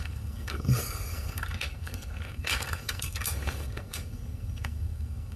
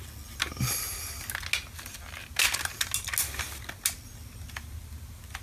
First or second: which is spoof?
first